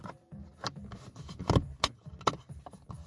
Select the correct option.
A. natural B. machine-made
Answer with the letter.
A